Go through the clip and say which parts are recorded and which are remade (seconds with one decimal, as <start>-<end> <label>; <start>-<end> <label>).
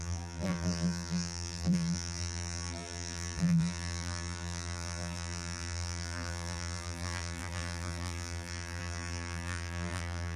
0.0-10.4 remade